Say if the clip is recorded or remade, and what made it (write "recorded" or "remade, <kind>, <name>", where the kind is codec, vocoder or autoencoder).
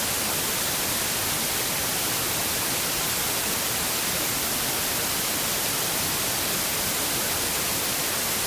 recorded